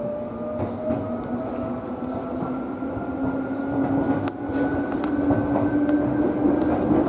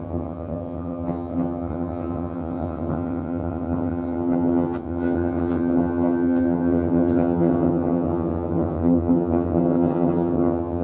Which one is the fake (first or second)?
second